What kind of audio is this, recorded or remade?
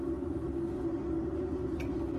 recorded